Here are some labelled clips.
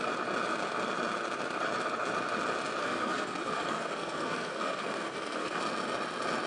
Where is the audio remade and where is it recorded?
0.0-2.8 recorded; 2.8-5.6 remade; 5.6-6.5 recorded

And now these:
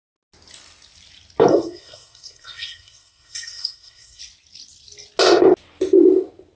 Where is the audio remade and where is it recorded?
0.0-1.5 recorded; 1.5-4.2 remade; 4.2-6.6 recorded

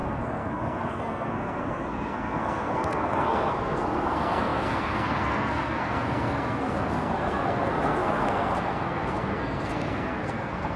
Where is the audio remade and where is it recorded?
0.0-10.8 remade

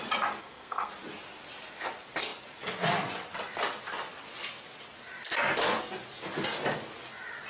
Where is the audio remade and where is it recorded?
0.0-0.4 recorded; 0.4-0.9 remade; 0.9-7.5 recorded

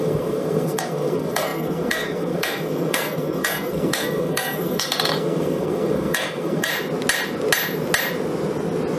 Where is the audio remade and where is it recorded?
0.0-6.7 remade; 6.7-9.0 recorded